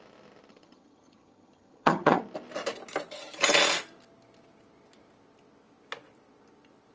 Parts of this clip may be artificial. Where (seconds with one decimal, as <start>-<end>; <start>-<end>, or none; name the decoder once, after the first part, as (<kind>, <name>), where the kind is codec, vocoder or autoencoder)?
0.5-2.2 (vocoder, HiFi-GAN)